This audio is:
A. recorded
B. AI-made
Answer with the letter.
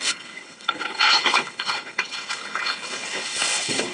B